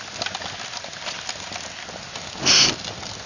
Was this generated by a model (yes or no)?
no